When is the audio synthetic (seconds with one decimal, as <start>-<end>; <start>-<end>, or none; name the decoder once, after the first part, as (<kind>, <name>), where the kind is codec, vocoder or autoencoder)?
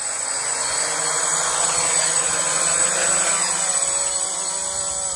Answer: 0.0-2.9 (vocoder, Vocos)